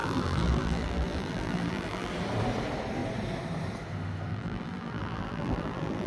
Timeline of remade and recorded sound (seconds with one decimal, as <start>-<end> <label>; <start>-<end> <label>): 0.0-2.1 remade; 2.1-4.3 recorded; 4.3-6.1 remade